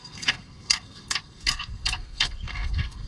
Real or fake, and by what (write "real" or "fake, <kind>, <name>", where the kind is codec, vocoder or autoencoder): fake, codec, SNAC